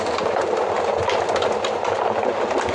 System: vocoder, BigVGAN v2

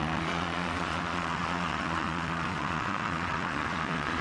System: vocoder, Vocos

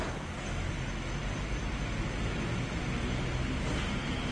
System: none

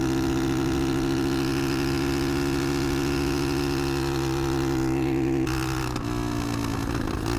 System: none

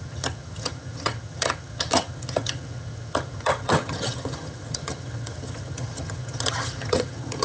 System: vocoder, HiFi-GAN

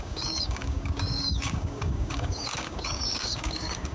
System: codec, DAC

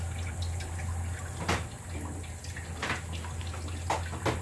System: none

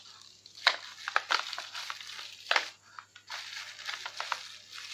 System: none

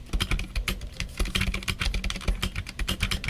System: none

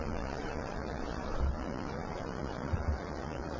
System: vocoder, Vocos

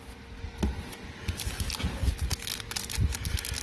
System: none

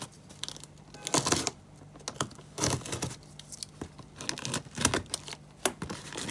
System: none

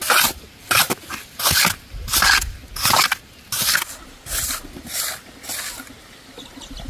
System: none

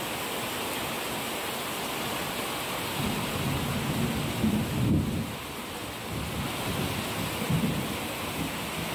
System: none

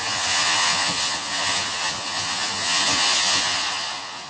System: vocoder, Vocos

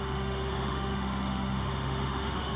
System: autoencoder, DAC-VAE